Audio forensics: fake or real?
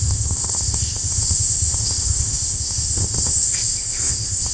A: fake